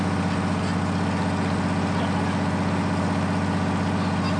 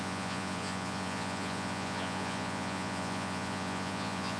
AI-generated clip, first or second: second